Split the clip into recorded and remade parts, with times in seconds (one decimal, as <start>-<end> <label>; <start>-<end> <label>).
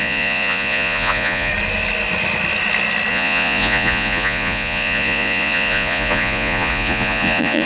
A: 0.0-1.5 remade; 1.5-3.1 recorded; 3.1-7.7 remade